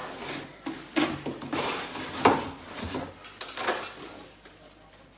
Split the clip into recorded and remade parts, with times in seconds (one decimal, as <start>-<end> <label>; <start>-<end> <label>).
0.0-5.2 recorded